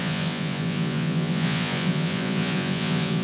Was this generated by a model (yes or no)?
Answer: yes